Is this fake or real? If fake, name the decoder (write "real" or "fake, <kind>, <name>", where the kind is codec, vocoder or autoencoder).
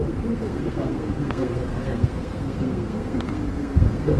fake, codec, SNAC